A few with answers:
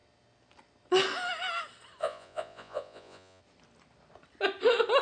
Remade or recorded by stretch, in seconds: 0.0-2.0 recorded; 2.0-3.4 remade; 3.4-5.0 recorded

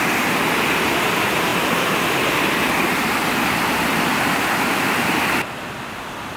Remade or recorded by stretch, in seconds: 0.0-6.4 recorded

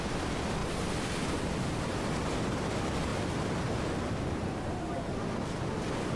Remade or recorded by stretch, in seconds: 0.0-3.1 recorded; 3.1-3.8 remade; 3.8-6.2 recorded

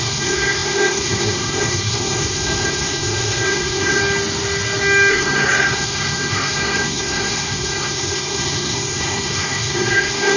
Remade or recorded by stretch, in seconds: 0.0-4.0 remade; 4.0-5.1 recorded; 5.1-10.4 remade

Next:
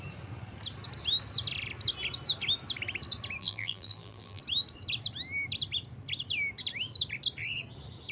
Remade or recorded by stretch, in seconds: 0.0-3.4 recorded; 3.4-4.4 remade; 4.4-8.1 recorded

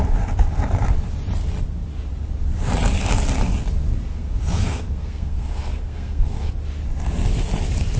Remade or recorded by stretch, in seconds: 0.0-4.1 recorded; 4.1-6.5 remade; 6.5-8.0 recorded

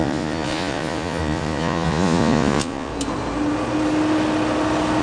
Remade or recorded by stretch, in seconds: 0.0-2.9 remade; 2.9-5.0 recorded